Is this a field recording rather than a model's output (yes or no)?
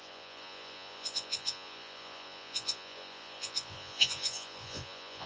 no